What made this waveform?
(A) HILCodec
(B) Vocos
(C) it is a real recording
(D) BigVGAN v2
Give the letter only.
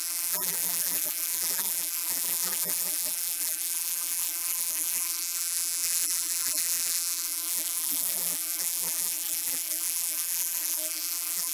D